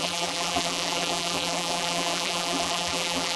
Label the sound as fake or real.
fake